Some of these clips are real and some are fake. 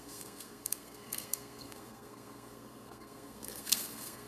fake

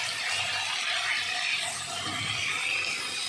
real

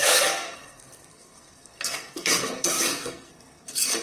fake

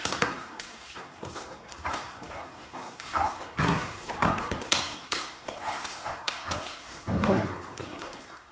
fake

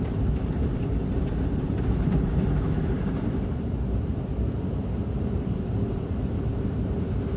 fake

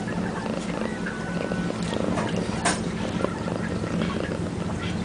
real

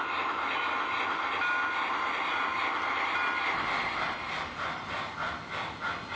real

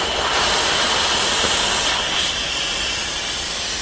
real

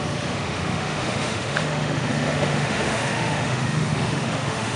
fake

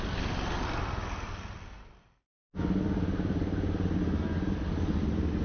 real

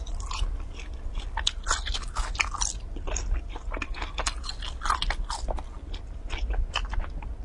real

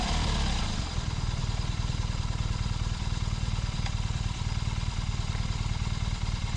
fake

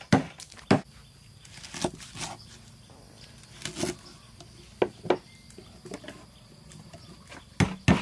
real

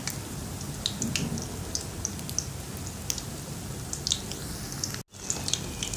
real